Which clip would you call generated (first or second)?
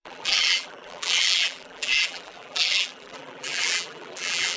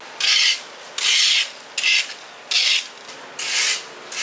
first